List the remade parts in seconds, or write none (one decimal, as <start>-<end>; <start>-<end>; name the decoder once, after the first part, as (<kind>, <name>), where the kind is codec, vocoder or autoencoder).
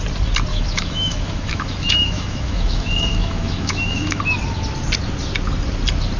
0.5-4.2 (autoencoder, DAC-VAE)